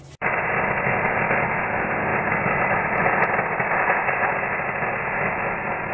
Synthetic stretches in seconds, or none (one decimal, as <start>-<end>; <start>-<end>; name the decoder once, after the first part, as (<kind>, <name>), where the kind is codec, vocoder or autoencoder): none